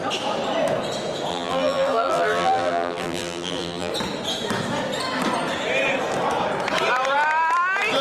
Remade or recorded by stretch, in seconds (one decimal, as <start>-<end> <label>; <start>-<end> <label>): 0.0-1.3 recorded; 1.3-3.9 remade; 3.9-8.0 recorded